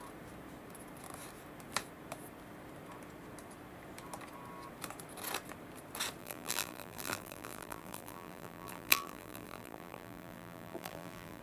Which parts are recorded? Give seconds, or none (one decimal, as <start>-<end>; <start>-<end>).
0.0-6.2

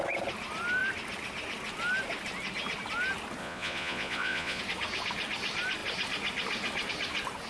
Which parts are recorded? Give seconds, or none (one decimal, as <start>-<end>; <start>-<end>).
0.0-3.4; 4.6-7.5